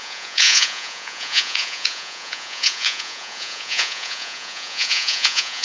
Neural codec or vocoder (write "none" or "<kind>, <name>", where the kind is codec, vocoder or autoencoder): vocoder, Vocos